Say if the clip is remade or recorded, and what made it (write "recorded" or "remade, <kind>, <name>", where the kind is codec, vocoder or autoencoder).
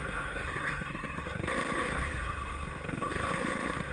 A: remade, codec, SNAC